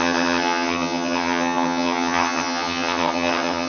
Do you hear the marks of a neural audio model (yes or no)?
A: yes